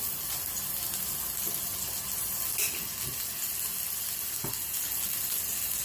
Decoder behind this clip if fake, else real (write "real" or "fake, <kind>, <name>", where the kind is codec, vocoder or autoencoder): real